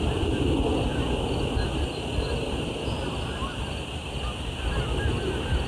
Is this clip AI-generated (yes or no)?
no